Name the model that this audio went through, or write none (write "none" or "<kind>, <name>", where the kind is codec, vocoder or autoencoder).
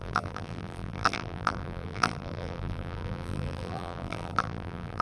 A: vocoder, BigVGAN v2